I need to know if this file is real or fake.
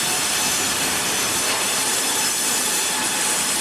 fake